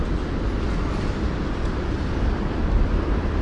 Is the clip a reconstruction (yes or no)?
no